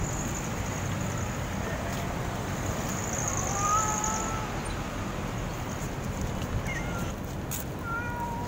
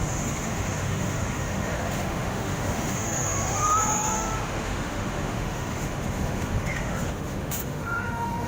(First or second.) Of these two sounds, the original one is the first